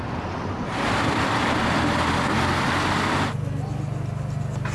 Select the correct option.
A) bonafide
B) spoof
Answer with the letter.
A